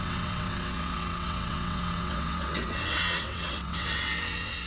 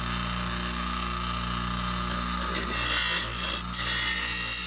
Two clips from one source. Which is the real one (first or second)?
second